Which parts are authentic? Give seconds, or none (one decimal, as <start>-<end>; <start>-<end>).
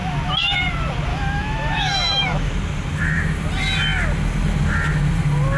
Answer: 0.0-1.1; 2.5-5.6